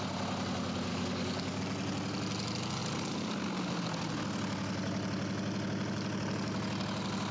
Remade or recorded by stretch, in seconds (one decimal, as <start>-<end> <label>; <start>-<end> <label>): 0.0-0.9 recorded; 0.9-1.6 remade; 1.6-7.3 recorded